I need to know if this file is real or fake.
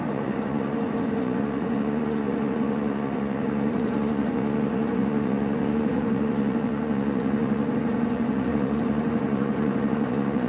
fake